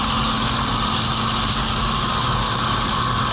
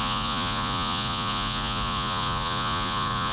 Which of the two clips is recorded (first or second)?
first